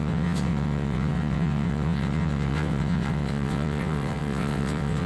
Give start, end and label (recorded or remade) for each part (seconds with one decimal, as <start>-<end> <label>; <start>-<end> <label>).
0.0-5.1 remade